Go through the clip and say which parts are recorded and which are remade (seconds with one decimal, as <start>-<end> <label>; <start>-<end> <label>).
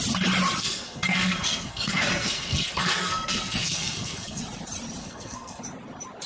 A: 0.0-0.6 recorded; 0.6-4.4 remade; 4.4-5.0 recorded; 5.0-5.6 remade; 5.6-6.3 recorded